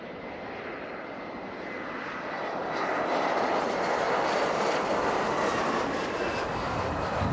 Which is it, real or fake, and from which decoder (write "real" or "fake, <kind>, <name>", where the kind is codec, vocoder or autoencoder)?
real